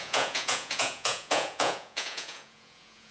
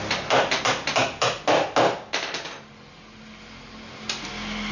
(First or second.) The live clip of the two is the second